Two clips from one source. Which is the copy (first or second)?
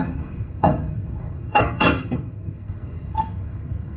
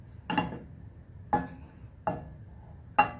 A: first